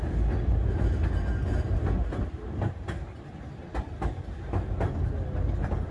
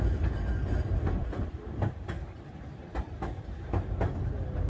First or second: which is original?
first